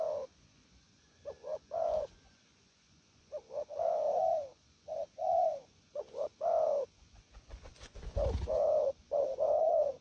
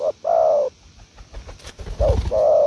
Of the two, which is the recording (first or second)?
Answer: second